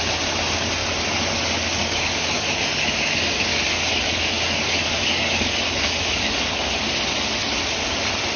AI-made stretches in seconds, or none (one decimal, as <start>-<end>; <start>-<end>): 1.8-6.8